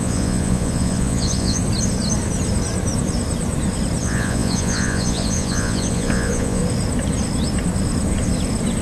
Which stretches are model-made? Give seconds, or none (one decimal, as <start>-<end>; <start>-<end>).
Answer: 0.0-1.6; 4.0-6.6